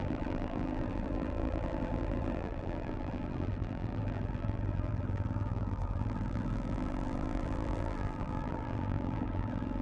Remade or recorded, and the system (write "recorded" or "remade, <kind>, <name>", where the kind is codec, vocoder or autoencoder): remade, vocoder, BigVGAN v2